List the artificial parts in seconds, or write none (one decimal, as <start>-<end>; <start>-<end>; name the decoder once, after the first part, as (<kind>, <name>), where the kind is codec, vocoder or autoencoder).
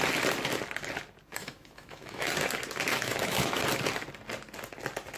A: 1.4-2.3 (autoencoder, DAC-VAE); 2.9-3.6